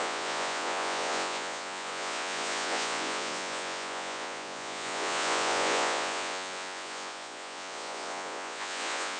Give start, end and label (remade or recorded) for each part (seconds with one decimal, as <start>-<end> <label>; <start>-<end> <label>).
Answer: 0.0-9.2 remade